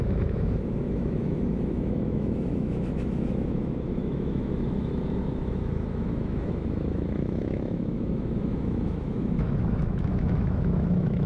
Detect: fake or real fake